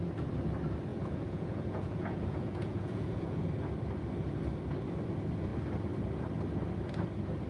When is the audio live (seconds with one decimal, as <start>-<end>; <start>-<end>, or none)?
0.0-0.9; 3.5-7.5